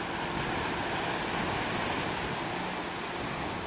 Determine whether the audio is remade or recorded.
recorded